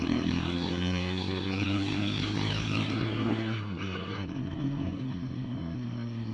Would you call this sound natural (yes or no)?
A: no